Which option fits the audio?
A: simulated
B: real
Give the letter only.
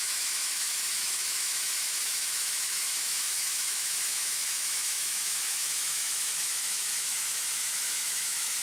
A